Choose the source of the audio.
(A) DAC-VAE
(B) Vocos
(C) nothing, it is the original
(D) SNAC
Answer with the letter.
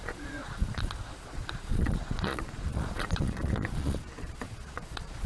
B